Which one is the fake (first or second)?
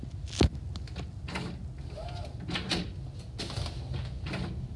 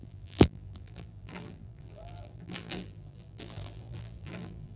second